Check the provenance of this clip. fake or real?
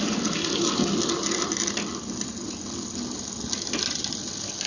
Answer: real